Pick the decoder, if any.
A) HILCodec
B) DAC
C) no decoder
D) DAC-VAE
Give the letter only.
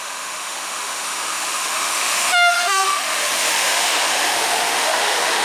D